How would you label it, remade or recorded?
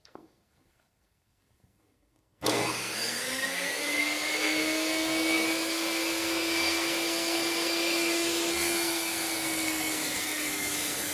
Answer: remade